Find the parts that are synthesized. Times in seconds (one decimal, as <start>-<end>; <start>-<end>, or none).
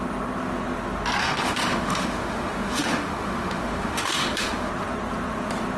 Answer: 1.2-4.7